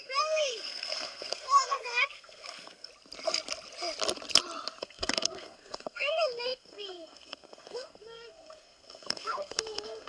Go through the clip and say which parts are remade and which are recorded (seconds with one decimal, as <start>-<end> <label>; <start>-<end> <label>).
0.0-2.9 remade; 2.9-4.8 recorded; 4.8-10.1 remade